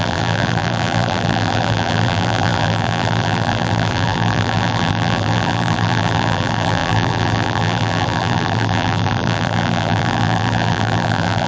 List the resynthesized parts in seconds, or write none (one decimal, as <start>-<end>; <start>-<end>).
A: 0.0-11.5